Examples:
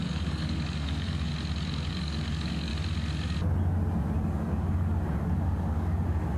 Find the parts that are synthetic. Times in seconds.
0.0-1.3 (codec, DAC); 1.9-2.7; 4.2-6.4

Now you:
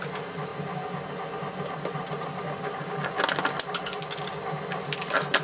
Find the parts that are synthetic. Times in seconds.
none

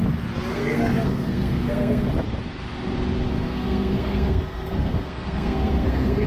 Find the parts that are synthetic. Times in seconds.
0.5-2.1 (codec, SNAC); 3.3-6.3

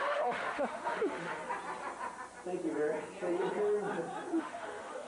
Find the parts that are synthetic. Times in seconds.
0.0-1.4 (autoencoder, DAC-VAE); 4.4-5.1

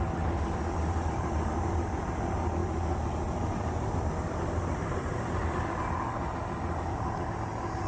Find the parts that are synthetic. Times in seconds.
none

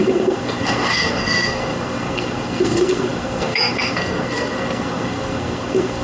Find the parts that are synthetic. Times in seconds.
0.0-6.0 (codec, SNAC)